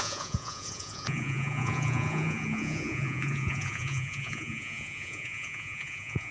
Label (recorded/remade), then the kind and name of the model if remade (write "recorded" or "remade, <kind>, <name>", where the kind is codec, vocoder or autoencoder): remade, vocoder, Vocos